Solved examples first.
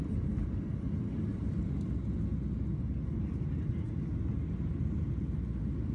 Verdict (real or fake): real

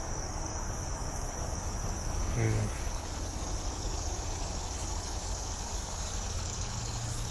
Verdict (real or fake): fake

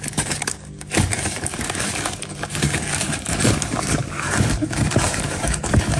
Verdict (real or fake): fake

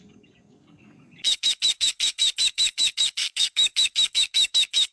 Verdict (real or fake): fake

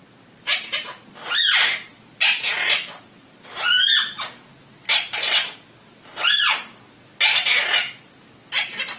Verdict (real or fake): real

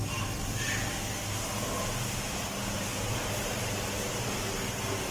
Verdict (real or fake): real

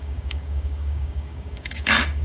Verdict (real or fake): fake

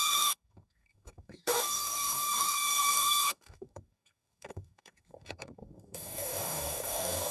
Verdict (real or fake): fake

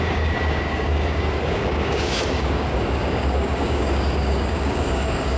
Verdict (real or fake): fake